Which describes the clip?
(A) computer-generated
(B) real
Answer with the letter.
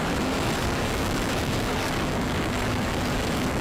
A